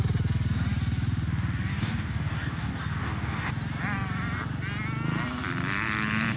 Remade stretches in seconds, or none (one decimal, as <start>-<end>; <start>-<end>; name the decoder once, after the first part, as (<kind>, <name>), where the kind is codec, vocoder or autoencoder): 1.7-3.5 (codec, DAC)